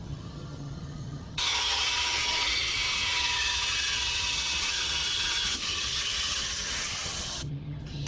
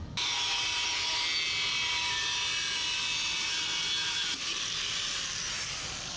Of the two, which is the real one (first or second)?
second